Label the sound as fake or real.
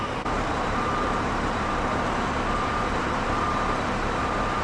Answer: fake